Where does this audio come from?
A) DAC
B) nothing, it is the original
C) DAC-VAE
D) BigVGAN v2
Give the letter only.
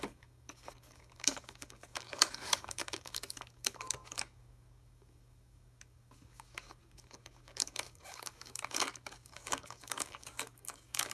A